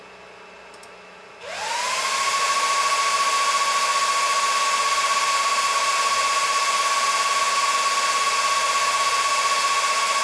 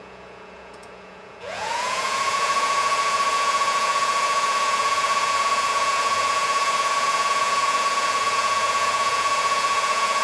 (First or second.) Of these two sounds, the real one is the first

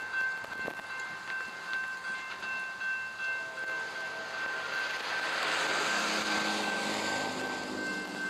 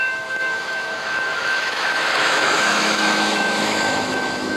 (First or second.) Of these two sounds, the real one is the first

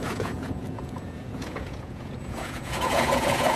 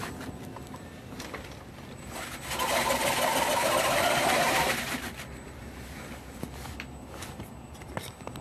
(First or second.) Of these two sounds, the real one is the second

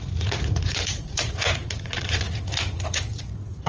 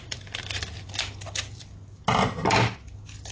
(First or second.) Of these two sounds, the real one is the second